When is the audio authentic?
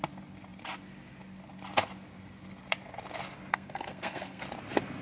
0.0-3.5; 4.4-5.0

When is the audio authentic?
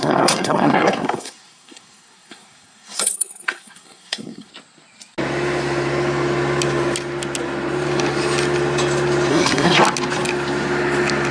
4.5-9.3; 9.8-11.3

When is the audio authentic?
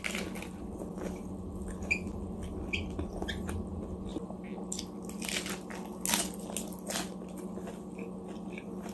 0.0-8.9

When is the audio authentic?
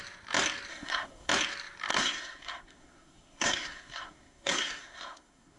0.0-0.7; 1.3-1.9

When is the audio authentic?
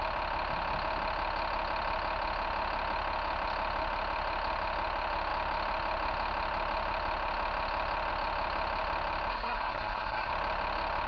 0.0-9.3; 10.3-11.1